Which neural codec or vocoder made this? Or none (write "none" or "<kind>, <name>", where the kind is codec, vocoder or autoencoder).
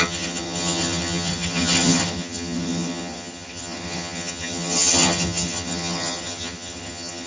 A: vocoder, HiFi-GAN